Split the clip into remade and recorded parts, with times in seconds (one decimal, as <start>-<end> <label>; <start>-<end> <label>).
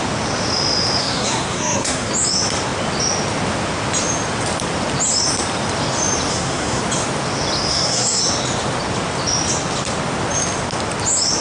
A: 0.0-1.0 recorded; 1.0-2.1 remade; 2.1-6.3 recorded; 6.3-6.8 remade; 6.8-7.7 recorded; 7.7-8.2 remade; 8.2-11.4 recorded